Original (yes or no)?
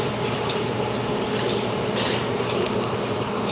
yes